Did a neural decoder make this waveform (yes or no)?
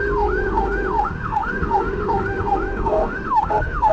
yes